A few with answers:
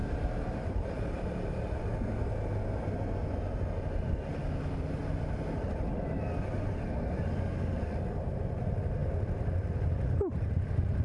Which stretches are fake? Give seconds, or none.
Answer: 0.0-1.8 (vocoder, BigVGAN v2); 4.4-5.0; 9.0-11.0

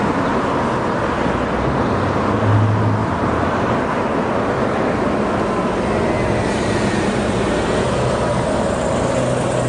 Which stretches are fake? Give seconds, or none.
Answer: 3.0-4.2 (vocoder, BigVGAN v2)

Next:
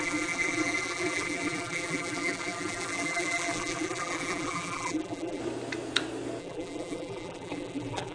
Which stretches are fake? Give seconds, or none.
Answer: 0.0-5.4 (vocoder, BigVGAN v2); 6.4-8.1